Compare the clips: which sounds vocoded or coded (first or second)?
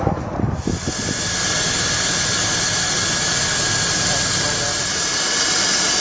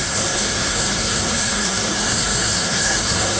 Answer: second